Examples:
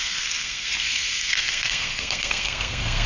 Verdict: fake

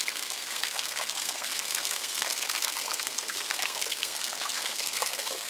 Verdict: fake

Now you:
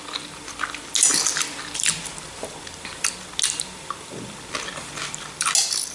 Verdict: real